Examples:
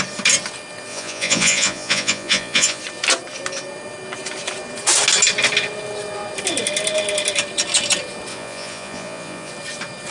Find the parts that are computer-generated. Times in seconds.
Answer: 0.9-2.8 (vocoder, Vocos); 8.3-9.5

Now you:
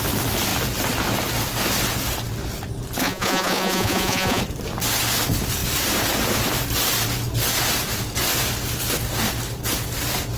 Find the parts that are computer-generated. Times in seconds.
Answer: 3.0-4.4 (vocoder, Vocos)

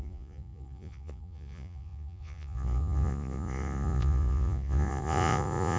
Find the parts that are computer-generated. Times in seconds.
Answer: 0.0-5.8 (vocoder, Vocos)

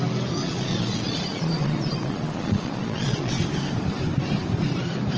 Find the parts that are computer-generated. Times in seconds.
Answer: 0.4-3.3 (vocoder, Vocos)

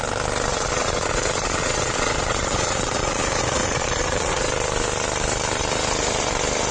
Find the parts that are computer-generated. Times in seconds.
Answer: 0.5-4.5 (vocoder, Vocos)

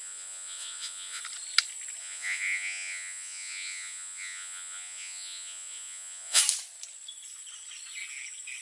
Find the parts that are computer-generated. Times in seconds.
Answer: 0.0-1.2 (vocoder, Vocos); 2.0-6.4

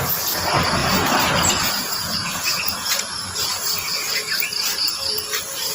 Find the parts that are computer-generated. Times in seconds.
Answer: 0.8-4.2 (vocoder, Vocos)

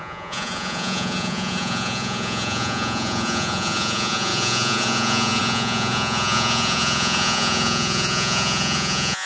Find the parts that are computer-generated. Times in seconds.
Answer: 0.0-9.3 (vocoder, Vocos)